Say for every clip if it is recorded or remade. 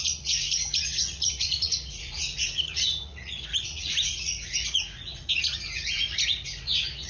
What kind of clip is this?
remade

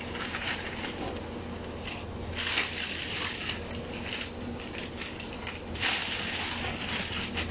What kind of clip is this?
recorded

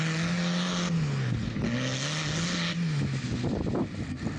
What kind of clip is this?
recorded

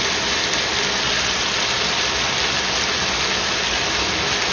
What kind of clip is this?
recorded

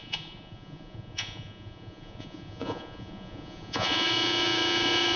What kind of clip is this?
remade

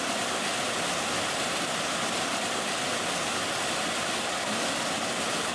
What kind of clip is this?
recorded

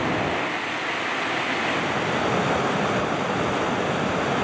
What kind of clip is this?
recorded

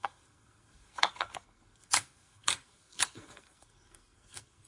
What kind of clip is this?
remade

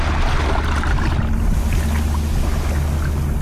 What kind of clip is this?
recorded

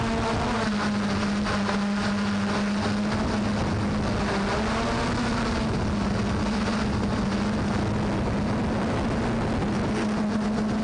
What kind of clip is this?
recorded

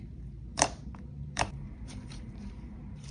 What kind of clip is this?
remade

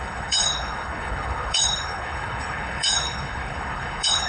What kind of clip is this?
remade